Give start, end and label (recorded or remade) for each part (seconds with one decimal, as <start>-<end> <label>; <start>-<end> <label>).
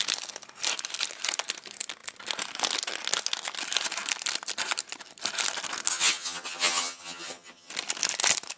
0.0-5.9 recorded; 5.9-7.7 remade; 7.7-8.6 recorded